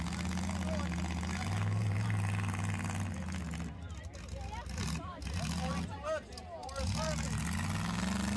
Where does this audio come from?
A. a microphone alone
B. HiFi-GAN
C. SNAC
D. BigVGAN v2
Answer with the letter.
A